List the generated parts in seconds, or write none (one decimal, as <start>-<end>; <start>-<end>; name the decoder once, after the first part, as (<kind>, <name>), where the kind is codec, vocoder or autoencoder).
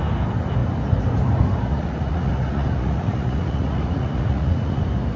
1.7-4.8 (vocoder, Vocos)